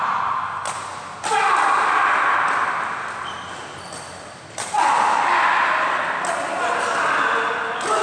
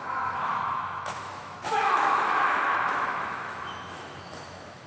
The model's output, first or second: second